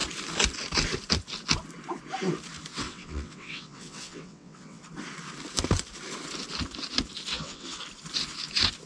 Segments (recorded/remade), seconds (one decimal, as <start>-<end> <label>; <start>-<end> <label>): 0.0-2.7 recorded; 2.7-4.8 remade; 4.8-7.3 recorded; 7.3-7.8 remade; 7.8-8.9 recorded